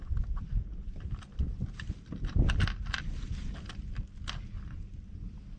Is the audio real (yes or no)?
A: yes